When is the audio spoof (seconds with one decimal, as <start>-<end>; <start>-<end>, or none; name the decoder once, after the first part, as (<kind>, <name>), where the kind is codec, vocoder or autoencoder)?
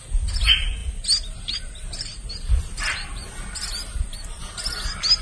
none